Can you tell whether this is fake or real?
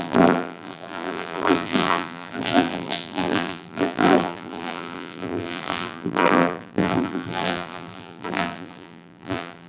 fake